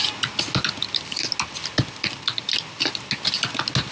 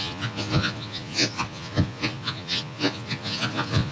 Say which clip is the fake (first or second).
second